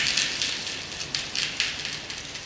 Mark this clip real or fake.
real